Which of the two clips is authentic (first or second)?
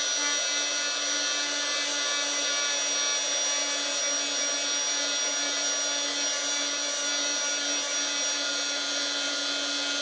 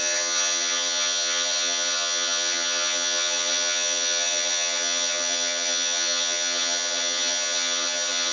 first